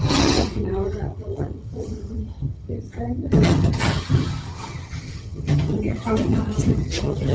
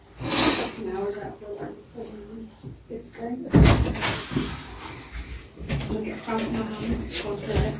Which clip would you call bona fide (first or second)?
second